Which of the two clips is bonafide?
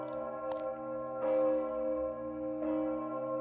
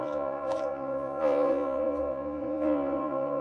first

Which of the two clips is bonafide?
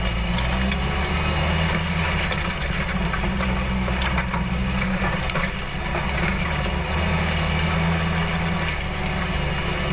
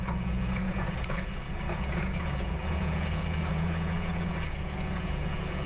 first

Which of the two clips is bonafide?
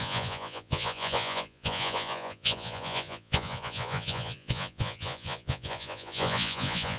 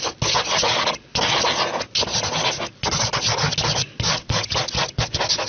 second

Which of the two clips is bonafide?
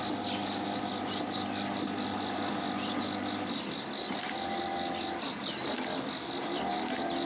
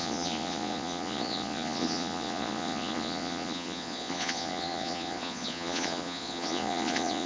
first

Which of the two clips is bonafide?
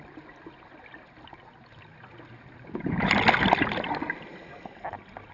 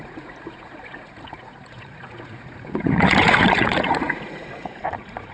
first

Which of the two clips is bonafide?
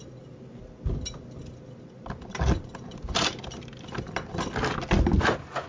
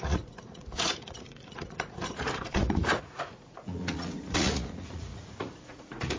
first